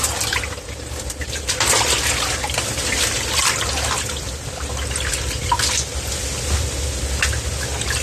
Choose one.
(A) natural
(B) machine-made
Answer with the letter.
A